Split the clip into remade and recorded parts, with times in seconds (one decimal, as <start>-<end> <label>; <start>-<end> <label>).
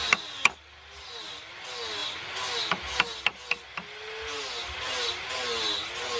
0.0-6.2 recorded